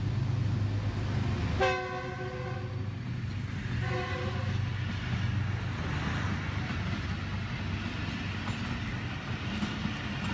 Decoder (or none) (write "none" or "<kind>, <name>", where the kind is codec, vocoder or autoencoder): none